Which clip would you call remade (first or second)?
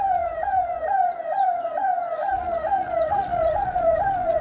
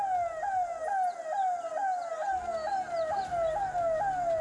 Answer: first